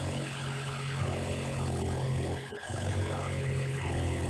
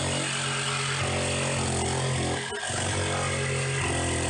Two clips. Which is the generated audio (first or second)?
first